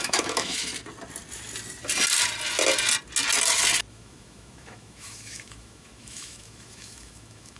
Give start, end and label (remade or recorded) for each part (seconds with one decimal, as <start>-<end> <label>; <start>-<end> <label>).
0.0-0.7 remade; 0.7-3.9 recorded; 3.9-7.6 remade